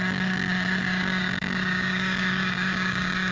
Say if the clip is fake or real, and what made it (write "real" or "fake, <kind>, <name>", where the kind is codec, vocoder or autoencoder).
fake, codec, DAC